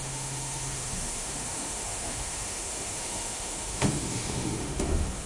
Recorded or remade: remade